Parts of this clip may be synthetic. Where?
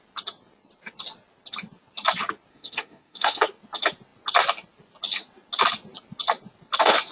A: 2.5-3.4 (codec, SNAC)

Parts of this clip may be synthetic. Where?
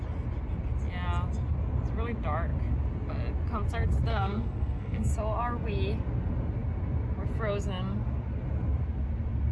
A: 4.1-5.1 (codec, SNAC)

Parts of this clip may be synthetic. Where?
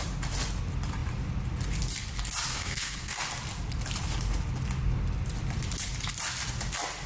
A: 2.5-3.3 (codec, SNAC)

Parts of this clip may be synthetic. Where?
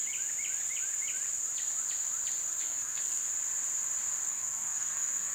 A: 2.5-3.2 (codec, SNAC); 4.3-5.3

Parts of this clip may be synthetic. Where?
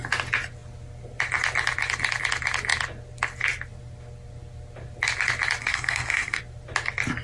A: 5.6-6.4 (codec, SNAC)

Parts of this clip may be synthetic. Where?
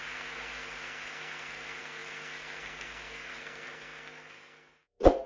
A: 0.0-5.3 (codec, SNAC)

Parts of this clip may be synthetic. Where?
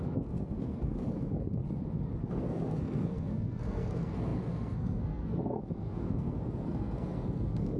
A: 0.0-1.6 (codec, SNAC); 2.3-7.8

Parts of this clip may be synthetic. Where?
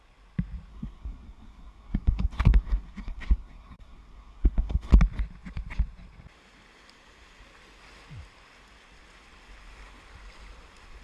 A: 0.7-4.9 (codec, SNAC)